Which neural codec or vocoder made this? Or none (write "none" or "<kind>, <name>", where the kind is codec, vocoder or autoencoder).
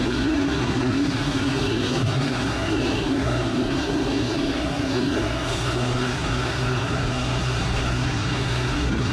codec, SNAC